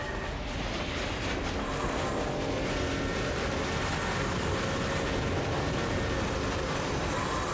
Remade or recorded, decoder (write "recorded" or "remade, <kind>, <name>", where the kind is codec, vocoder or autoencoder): recorded